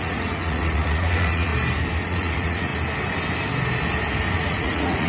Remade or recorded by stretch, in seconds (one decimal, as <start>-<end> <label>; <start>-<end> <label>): 0.0-1.5 remade; 1.5-2.0 recorded; 2.0-2.7 remade; 2.7-4.3 recorded; 4.3-5.1 remade